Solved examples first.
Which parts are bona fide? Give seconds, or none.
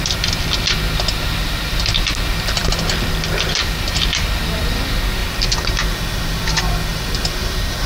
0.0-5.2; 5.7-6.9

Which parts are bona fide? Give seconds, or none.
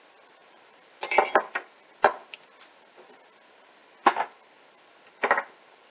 0.0-0.4; 1.1-5.9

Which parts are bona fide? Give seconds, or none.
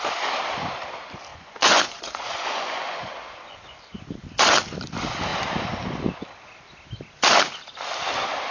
0.0-1.3; 3.9-8.5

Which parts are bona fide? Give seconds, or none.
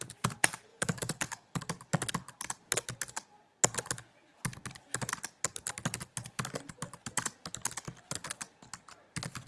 0.0-0.7; 1.6-9.5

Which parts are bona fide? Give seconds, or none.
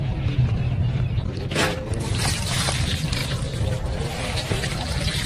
0.6-1.6